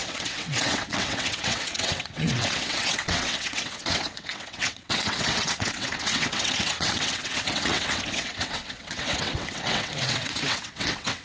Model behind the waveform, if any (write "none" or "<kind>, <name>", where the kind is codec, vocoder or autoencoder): vocoder, WaveNeXt